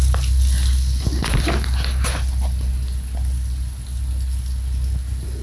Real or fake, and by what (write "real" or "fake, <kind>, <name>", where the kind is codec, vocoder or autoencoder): real